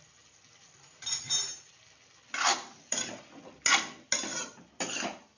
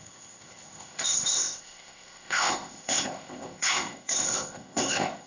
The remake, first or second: second